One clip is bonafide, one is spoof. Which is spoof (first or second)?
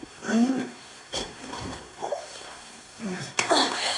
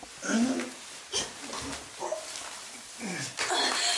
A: first